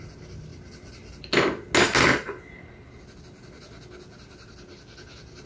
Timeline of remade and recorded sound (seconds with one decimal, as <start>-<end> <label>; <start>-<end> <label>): 0.0-5.5 recorded